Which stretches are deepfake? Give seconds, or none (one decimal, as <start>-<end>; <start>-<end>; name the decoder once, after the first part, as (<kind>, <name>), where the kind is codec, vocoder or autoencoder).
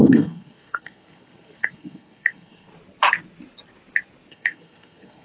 0.0-2.7 (codec, SNAC); 4.3-5.2